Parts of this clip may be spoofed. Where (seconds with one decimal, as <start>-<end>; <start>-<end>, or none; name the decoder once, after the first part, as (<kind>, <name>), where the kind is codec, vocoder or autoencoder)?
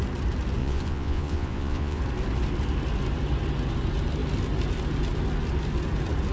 0.6-2.0 (vocoder, Vocos)